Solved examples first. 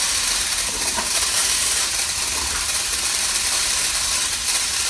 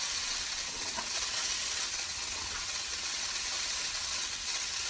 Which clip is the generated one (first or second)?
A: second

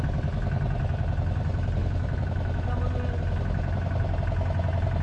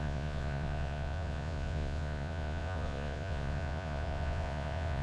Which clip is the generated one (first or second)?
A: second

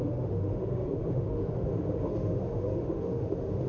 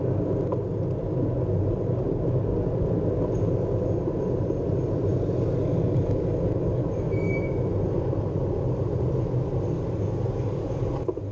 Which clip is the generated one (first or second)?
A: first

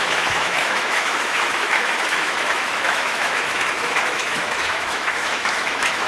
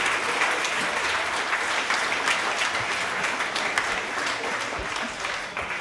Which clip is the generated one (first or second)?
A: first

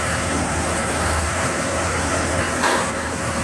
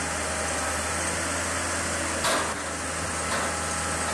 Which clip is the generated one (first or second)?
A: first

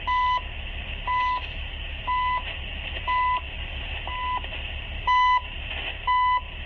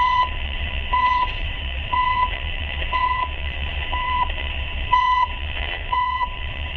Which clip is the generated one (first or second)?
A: second